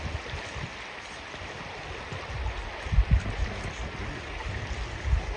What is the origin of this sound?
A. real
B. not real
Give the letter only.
A